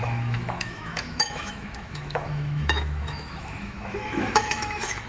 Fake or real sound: fake